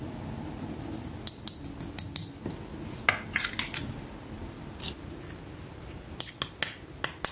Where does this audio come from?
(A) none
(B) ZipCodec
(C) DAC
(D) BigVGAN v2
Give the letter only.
A